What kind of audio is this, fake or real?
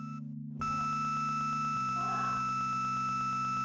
real